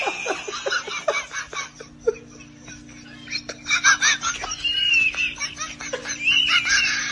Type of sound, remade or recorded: recorded